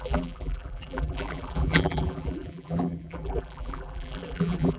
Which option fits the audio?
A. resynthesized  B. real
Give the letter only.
A